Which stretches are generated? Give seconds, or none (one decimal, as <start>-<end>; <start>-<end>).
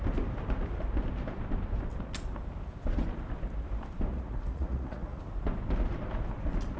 4.1-5.2